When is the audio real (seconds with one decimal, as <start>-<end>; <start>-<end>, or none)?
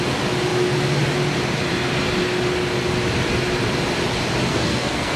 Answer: 0.0-4.5